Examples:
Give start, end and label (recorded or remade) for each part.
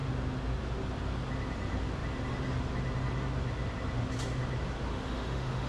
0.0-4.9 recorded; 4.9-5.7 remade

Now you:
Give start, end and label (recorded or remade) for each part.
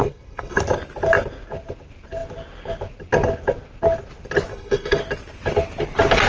0.0-0.6 remade; 0.6-4.5 recorded; 4.5-5.0 remade; 5.0-6.3 recorded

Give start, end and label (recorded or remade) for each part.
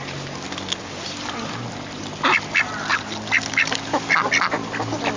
0.0-5.2 recorded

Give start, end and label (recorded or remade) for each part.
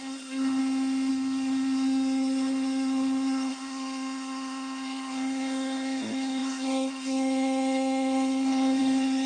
0.0-0.6 remade; 0.6-1.1 recorded; 1.1-9.3 remade